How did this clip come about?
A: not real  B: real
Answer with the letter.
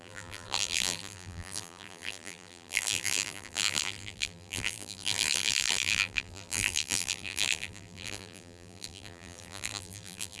A